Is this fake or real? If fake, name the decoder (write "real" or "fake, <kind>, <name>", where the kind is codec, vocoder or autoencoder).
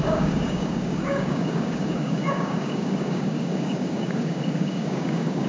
fake, codec, DAC